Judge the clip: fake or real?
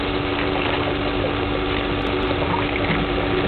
real